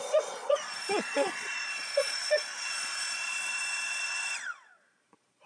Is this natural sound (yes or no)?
no